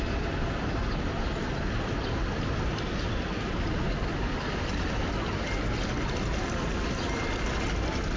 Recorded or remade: recorded